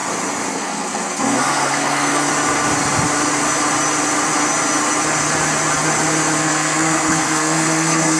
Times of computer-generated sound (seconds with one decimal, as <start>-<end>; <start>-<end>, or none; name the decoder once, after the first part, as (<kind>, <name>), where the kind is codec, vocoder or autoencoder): 0.5-2.3 (codec, SNAC); 6.4-8.2